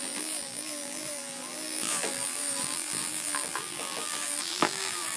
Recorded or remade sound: remade